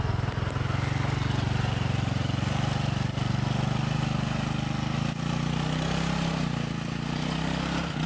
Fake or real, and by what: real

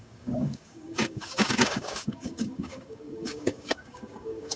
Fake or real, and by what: fake, codec, DAC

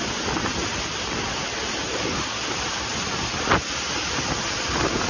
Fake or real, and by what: real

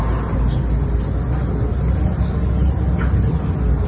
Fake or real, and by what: real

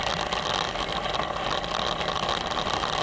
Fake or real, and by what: real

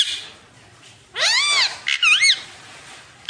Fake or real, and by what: real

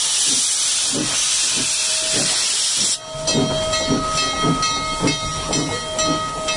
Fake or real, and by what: real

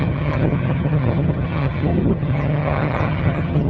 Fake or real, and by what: fake, vocoder, HiFi-GAN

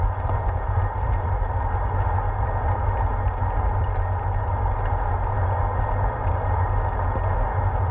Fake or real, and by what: real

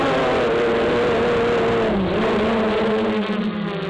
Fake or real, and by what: real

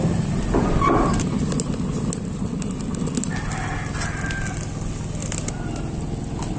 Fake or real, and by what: real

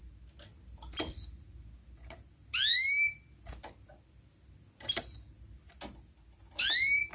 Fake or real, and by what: real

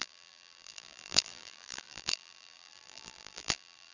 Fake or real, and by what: fake, vocoder, BigVGAN v2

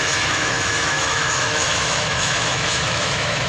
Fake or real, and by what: fake, autoencoder, DAC-VAE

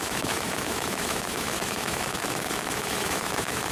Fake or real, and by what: fake, autoencoder, DAC-VAE